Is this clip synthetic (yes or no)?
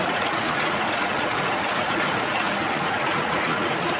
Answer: yes